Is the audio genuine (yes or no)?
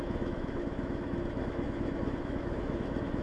no